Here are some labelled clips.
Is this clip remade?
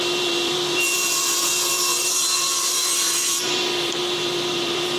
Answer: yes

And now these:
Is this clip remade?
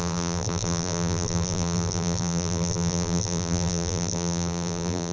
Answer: yes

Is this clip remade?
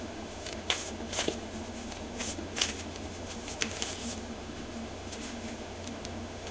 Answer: yes